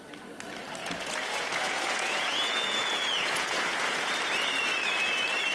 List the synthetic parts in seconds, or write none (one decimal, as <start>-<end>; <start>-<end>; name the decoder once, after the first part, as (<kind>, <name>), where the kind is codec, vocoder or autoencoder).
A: 0.8-4.1 (vocoder, Vocos)